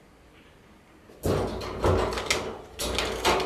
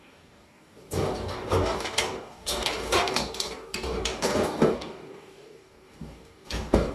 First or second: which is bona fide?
first